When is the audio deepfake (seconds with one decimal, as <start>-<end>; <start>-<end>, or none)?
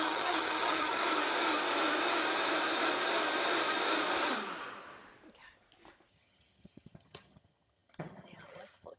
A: 0.0-1.0; 6.1-9.0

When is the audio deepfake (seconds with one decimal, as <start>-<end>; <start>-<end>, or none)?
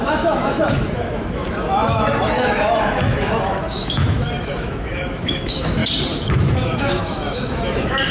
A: 0.0-5.8; 6.3-8.1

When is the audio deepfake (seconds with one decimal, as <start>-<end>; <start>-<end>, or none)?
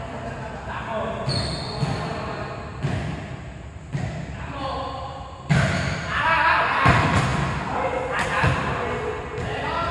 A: none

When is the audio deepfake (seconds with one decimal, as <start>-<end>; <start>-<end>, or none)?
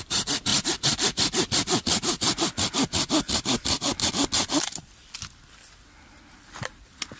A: none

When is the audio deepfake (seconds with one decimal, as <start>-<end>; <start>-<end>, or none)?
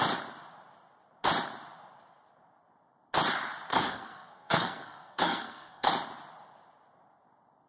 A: 3.7-5.9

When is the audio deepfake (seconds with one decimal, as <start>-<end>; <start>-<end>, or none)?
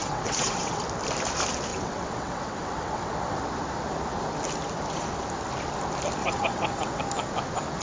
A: 0.0-0.8; 1.7-3.4; 6.2-7.0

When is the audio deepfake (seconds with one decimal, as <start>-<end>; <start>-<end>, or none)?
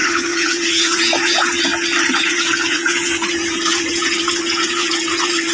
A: 0.0-1.7; 2.2-5.5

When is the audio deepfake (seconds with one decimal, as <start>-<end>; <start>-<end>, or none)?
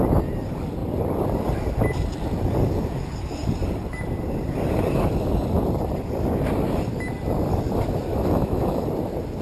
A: 8.1-8.8